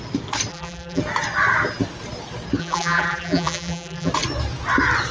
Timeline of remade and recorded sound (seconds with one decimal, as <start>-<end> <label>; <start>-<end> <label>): 0.0-0.5 recorded; 0.5-1.0 remade; 1.0-2.6 recorded; 2.6-4.1 remade; 4.1-5.1 recorded